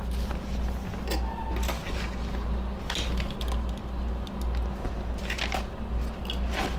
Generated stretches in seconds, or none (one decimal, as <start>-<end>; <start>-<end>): none